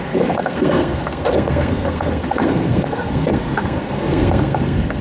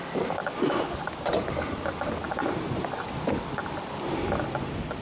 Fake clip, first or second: first